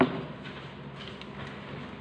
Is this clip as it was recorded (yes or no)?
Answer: yes